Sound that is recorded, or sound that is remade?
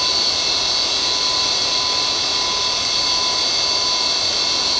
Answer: remade